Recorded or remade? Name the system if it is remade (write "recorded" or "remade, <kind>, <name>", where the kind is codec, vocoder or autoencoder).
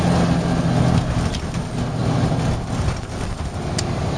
recorded